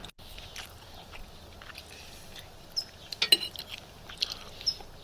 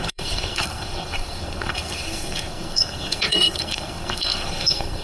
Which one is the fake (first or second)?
second